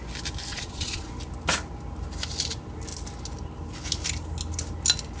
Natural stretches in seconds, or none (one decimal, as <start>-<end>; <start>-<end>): 0.0-0.5; 1.1-5.2